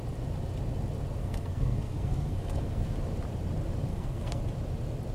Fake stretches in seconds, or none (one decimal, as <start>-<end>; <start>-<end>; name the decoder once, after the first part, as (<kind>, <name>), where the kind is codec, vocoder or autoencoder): 1.2-2.9 (codec, SNAC); 3.9-4.4